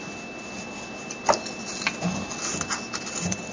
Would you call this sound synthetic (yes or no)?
no